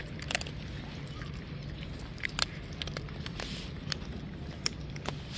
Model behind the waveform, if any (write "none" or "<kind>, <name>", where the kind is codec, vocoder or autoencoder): none